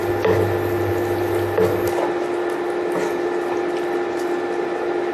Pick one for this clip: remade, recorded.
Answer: recorded